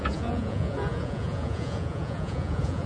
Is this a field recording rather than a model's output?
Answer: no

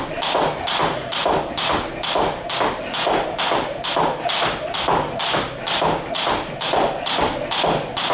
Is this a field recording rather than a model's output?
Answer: yes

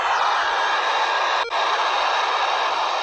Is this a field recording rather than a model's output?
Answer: yes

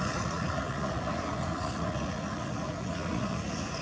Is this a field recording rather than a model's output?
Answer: no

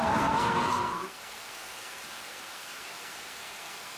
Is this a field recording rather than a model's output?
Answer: no